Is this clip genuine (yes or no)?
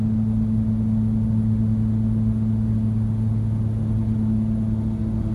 yes